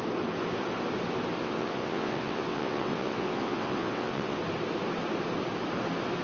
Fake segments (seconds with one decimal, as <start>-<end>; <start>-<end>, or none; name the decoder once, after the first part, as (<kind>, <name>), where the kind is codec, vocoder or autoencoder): 1.4-4.4 (vocoder, WaveNeXt)